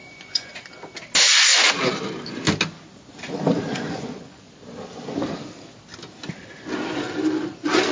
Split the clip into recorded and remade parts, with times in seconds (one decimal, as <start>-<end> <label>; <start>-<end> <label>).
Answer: 0.0-0.5 remade; 0.5-3.7 recorded; 3.7-4.5 remade; 4.5-7.9 recorded